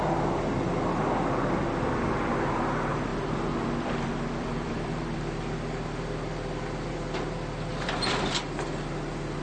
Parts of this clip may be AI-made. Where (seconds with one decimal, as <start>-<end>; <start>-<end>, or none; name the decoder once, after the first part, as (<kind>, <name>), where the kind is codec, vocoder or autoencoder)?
3.1-5.2 (vocoder, BigVGAN v2); 7.7-8.4